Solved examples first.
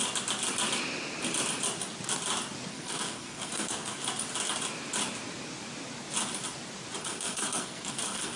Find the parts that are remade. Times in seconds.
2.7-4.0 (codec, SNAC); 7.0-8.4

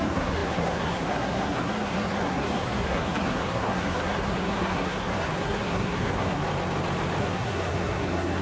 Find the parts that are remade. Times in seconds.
0.0-6.4 (codec, SNAC); 7.2-8.4

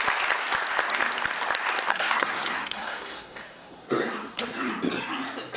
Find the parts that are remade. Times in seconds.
1.9-4.7 (codec, SNAC)

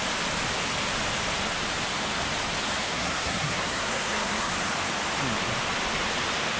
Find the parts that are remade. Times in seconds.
2.8-4.5 (codec, SNAC)

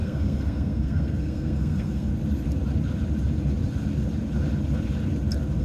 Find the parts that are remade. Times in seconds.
0.0-2.1 (codec, SNAC)

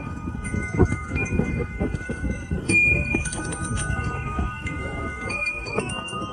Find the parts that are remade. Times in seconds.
0.0-6.3 (codec, SNAC)

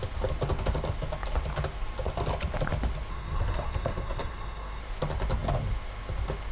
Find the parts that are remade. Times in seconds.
3.1-4.8 (codec, SNAC)

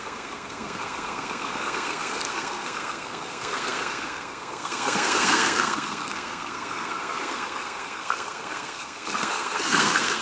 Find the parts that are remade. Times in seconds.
0.0-10.2 (codec, SNAC)